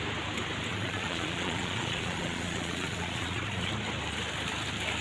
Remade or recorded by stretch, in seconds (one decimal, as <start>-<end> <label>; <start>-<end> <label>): 0.0-0.7 recorded; 0.7-3.7 remade; 3.7-5.0 recorded

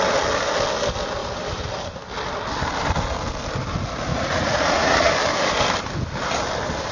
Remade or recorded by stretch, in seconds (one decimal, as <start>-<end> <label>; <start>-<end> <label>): 0.0-4.1 recorded; 4.1-5.1 remade; 5.1-6.9 recorded

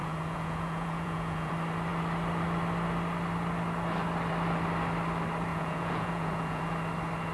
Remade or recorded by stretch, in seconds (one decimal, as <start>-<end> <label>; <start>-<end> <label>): 0.0-1.5 remade; 1.5-5.5 recorded; 5.5-6.6 remade; 6.6-7.3 recorded

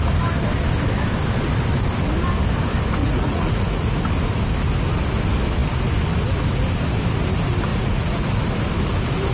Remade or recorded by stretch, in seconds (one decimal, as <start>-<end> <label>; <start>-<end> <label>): 0.0-3.0 recorded; 3.0-4.0 remade; 4.0-7.7 recorded; 7.7-8.4 remade; 8.4-9.3 recorded

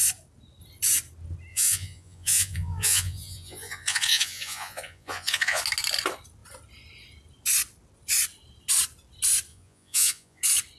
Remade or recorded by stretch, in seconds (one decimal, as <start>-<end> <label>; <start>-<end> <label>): 0.0-1.5 recorded; 1.5-5.6 remade; 5.6-9.5 recorded; 9.5-10.4 remade; 10.4-10.8 recorded

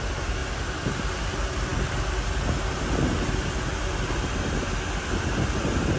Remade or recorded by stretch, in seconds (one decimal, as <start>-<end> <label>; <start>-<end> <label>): 0.0-6.0 recorded